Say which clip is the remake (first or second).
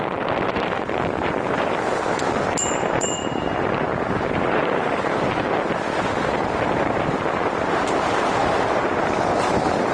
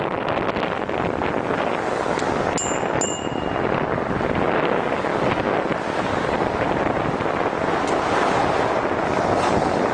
first